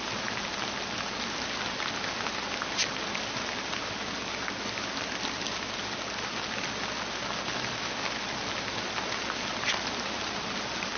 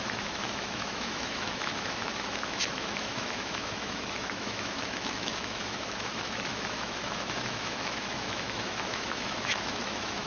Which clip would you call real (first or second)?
first